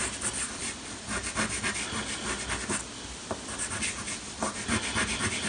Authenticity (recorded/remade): recorded